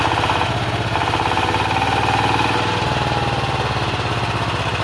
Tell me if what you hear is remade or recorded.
recorded